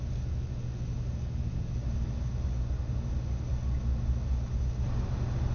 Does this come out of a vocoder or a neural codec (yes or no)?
no